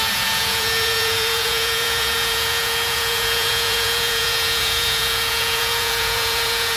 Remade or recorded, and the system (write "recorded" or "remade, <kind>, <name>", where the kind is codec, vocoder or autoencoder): remade, vocoder, Vocos